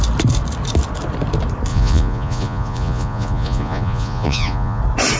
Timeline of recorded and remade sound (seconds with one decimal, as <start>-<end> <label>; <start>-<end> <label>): 0.0-1.7 recorded; 1.7-4.8 remade; 4.8-5.2 recorded